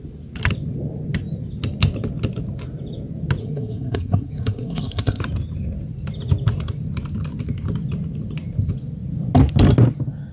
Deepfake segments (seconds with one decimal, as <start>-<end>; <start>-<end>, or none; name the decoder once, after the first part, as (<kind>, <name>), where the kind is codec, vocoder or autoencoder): 3.4-5.2 (codec, SNAC)